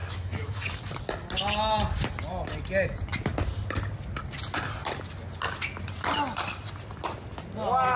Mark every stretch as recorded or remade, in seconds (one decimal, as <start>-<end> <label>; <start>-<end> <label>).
0.0-0.8 remade; 0.8-8.0 recorded